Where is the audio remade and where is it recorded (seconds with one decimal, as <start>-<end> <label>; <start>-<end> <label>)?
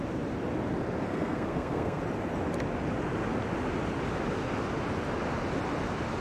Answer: 0.0-1.1 recorded; 1.1-2.0 remade; 2.0-6.2 recorded